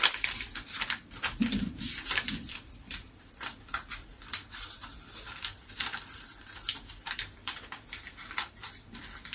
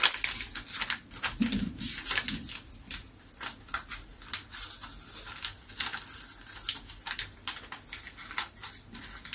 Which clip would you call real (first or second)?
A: second